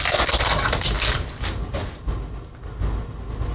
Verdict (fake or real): real